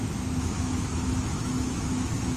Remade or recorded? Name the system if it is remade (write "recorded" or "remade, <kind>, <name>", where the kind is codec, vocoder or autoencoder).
remade, autoencoder, DAC-VAE